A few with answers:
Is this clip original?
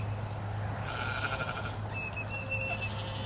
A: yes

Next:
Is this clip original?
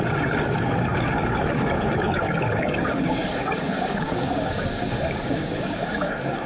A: no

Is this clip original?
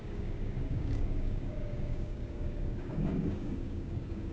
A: no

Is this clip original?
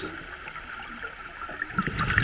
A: yes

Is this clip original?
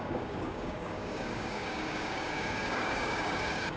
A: no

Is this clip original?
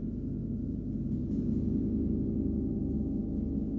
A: yes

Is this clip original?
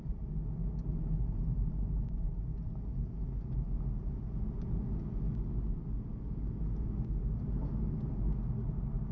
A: yes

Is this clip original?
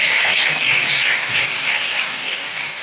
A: no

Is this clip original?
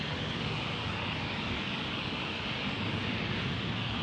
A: no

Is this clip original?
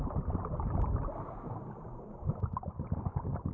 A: yes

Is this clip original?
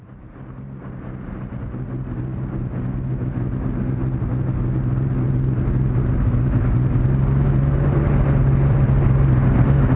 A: yes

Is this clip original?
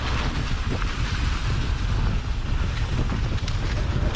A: yes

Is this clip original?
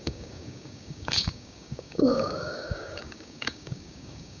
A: no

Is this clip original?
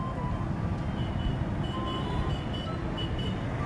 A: yes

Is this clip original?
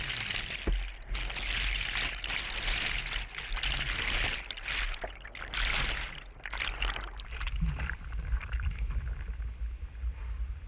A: yes